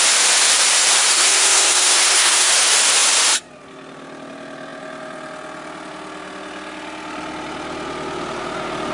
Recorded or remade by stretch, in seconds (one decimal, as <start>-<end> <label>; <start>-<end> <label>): 0.0-1.1 recorded; 1.1-2.5 remade; 2.5-8.9 recorded